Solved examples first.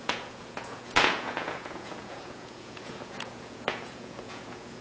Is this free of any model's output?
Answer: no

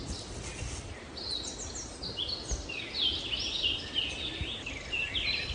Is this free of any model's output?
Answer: yes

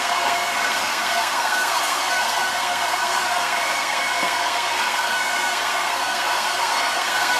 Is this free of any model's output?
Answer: no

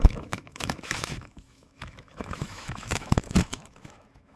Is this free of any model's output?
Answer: no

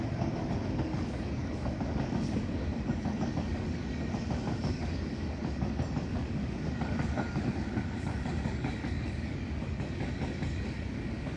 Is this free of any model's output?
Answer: no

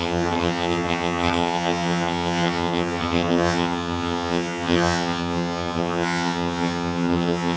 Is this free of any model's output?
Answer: no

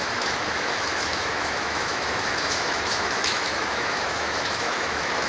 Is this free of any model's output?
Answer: no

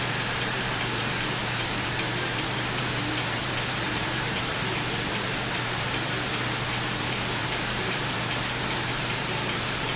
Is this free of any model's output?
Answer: no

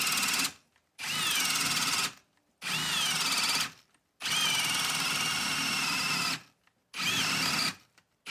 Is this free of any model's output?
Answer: yes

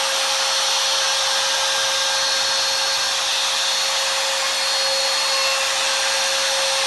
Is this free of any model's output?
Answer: yes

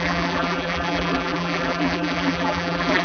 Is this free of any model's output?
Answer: no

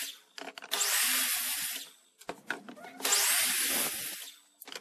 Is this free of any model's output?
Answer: yes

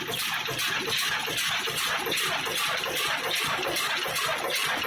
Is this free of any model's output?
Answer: yes